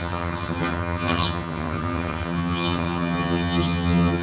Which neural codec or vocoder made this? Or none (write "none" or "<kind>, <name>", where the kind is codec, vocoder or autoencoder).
vocoder, HiFi-GAN